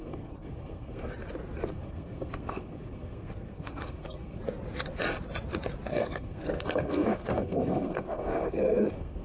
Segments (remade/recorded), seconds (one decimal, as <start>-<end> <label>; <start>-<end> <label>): 0.0-1.1 remade; 1.1-1.7 recorded; 1.7-4.4 remade; 4.4-5.9 recorded; 5.9-9.2 remade